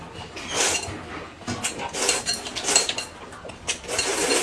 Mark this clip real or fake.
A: real